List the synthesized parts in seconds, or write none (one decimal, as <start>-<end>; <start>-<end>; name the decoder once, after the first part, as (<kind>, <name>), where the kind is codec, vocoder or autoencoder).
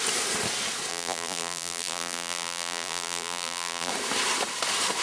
0.9-3.9 (vocoder, BigVGAN v2)